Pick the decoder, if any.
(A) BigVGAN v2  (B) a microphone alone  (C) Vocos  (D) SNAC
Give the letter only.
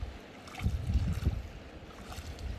B